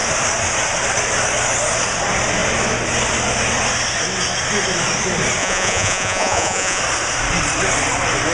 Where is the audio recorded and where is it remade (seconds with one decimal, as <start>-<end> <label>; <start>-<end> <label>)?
0.0-5.4 recorded; 5.4-6.8 remade; 6.8-8.3 recorded